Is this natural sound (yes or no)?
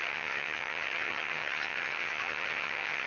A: no